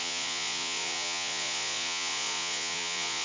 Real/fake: fake